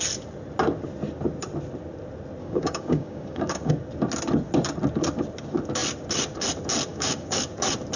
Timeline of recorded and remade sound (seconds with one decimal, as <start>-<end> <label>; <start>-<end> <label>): 0.0-2.4 recorded; 2.4-3.7 remade; 3.7-6.9 recorded; 6.9-7.4 remade; 7.4-8.0 recorded